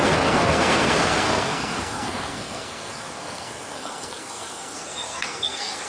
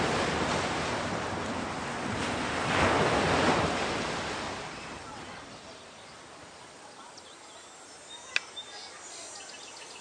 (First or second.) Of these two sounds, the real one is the second